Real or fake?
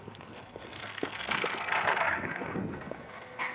fake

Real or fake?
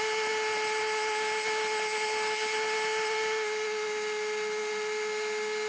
real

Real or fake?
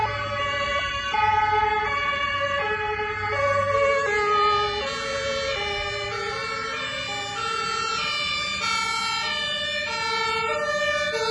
real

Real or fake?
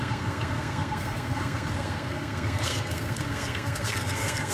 fake